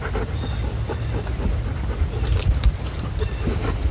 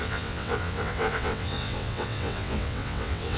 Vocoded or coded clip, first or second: second